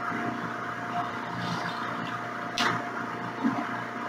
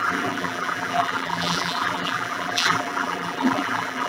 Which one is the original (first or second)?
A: first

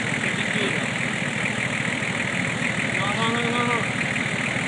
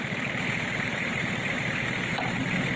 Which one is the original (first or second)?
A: first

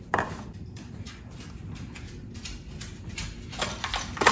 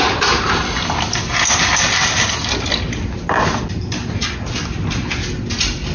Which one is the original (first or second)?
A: second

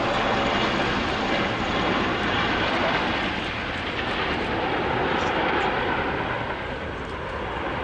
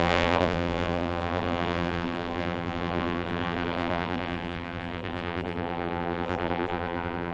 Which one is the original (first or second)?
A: first